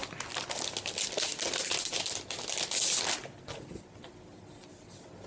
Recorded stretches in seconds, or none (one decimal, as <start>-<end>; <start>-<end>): 0.0-5.3